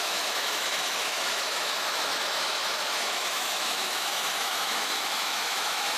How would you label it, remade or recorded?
remade